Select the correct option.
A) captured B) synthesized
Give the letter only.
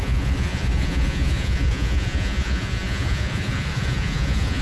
B